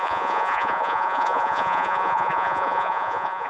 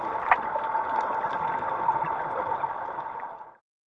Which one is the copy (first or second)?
first